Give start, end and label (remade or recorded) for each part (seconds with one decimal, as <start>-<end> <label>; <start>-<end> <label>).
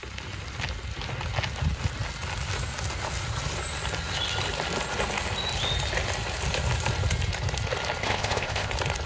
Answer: 0.0-8.0 recorded; 8.0-8.7 remade; 8.7-9.1 recorded